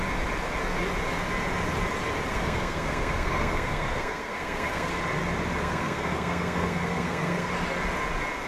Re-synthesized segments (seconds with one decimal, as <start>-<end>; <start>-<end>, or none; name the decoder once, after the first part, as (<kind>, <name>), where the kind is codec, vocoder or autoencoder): 2.3-4.9 (codec, SNAC); 5.6-7.5